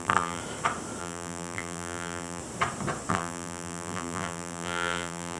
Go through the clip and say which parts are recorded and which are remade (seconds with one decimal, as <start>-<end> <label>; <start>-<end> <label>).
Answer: 0.0-0.4 remade; 0.4-1.0 recorded; 1.0-2.4 remade; 2.4-3.1 recorded; 3.1-5.4 remade